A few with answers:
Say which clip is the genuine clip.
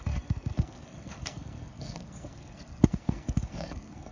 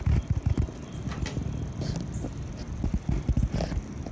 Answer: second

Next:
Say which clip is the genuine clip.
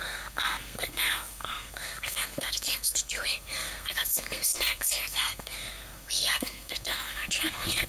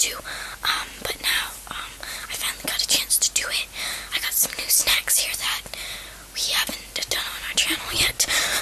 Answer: second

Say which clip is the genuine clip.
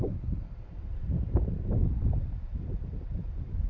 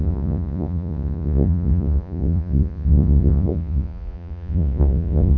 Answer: first